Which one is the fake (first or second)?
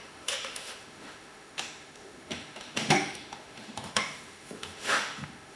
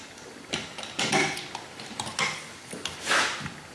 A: first